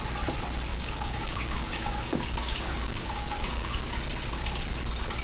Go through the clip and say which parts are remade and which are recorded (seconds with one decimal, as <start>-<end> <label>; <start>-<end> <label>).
0.0-0.7 recorded; 0.7-3.8 remade; 3.8-5.2 recorded